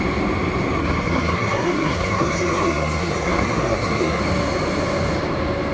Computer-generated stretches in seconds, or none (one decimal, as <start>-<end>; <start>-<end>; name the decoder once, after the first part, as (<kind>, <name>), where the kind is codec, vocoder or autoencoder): 0.8-4.2 (codec, SNAC)

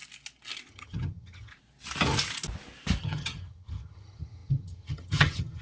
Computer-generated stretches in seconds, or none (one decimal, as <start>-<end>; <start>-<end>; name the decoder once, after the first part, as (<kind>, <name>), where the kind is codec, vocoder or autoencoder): 0.7-1.5 (vocoder, HiFi-GAN); 3.0-5.6

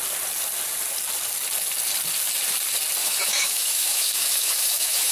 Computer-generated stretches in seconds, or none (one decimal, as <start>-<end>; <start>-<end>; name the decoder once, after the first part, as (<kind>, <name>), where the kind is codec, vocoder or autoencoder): 3.0-5.1 (autoencoder, DAC-VAE)